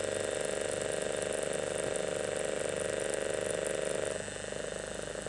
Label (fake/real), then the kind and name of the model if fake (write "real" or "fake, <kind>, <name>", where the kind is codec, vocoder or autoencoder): real